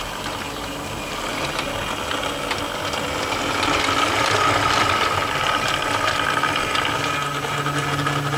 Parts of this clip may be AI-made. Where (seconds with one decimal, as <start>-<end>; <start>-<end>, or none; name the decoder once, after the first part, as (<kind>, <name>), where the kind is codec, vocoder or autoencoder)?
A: none

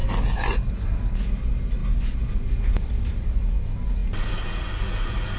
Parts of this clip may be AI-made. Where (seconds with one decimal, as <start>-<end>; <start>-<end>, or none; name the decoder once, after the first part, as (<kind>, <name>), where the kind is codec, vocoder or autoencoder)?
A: none